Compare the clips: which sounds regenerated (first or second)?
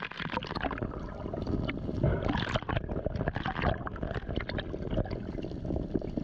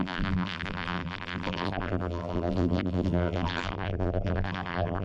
second